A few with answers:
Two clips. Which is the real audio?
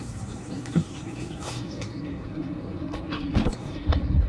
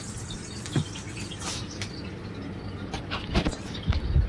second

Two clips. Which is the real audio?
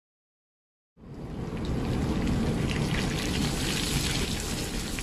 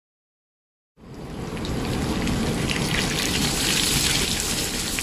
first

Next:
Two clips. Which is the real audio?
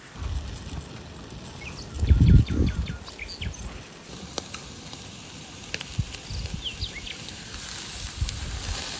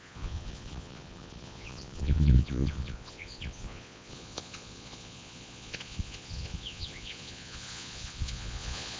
first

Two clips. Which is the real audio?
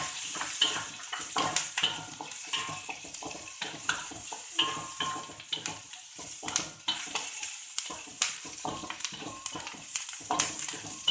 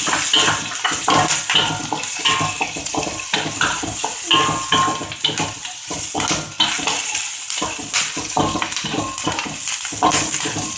second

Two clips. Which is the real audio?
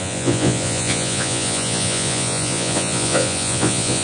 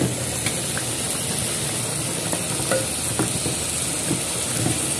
second